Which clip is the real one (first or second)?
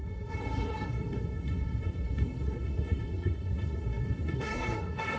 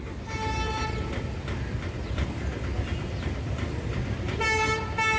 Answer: second